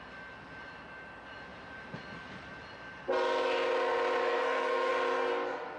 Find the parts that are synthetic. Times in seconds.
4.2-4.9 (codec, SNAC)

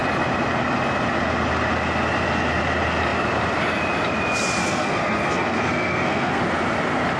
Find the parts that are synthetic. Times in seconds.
4.6-6.4 (codec, SNAC)